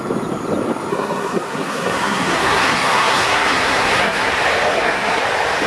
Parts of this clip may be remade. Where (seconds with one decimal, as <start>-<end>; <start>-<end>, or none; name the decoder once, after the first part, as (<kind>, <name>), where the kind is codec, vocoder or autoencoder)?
0.9-4.3 (codec, SNAC); 4.7-5.2